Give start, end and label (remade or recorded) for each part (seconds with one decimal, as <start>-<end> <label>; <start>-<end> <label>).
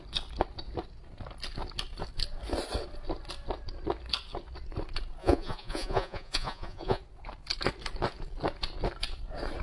0.0-5.2 recorded; 5.2-7.0 remade; 7.0-9.6 recorded